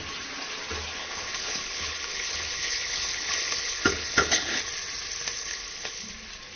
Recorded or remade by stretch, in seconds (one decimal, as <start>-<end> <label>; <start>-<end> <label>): 0.0-0.9 recorded; 0.9-4.6 remade; 4.6-5.4 recorded; 5.4-6.1 remade; 6.1-6.6 recorded